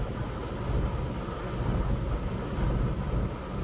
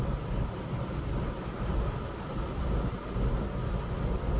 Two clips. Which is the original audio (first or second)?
first